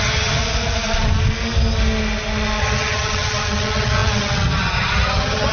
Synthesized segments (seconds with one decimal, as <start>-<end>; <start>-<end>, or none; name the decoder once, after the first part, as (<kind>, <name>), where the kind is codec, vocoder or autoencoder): 0.0-0.4 (vocoder, HiFi-GAN); 2.6-5.5